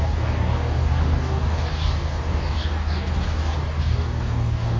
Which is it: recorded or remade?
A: remade